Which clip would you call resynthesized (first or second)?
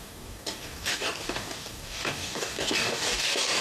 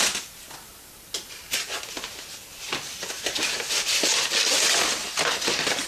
first